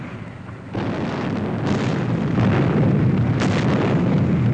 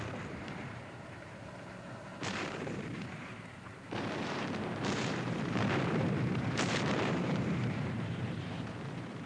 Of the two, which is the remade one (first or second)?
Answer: second